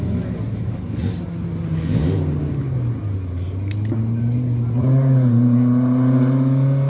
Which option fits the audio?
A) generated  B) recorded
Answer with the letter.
B